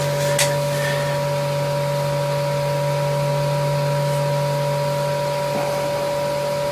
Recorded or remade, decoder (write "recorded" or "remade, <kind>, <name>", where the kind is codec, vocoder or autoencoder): recorded